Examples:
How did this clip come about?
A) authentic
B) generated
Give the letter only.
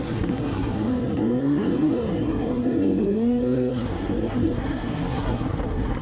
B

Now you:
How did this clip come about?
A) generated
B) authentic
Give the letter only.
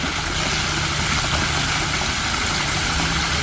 B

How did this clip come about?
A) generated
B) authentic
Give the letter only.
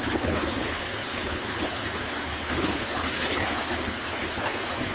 A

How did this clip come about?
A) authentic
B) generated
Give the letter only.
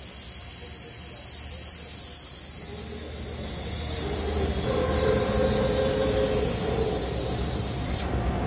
A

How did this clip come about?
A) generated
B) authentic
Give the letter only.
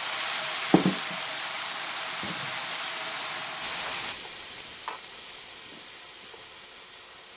B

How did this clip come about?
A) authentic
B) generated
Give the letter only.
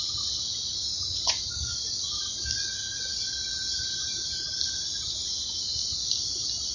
A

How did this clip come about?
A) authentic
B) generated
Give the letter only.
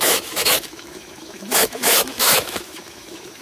B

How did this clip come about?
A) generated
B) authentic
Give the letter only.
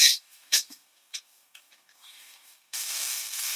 A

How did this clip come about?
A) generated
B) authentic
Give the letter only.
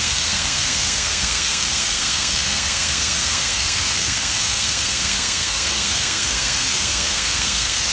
A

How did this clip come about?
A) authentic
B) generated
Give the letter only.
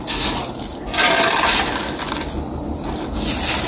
A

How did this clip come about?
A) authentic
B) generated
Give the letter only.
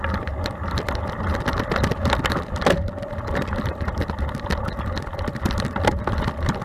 A